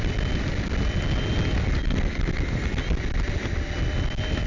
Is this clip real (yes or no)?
yes